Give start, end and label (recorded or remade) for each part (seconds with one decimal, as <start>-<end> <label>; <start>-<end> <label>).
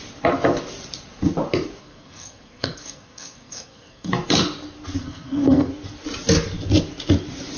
0.0-1.8 recorded; 1.8-4.1 remade; 4.1-5.0 recorded; 5.0-5.7 remade; 5.7-7.6 recorded